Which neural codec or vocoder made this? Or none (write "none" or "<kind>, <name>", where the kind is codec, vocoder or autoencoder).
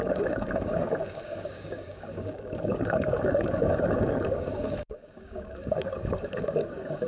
codec, DAC